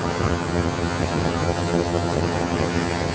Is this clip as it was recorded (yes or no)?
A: no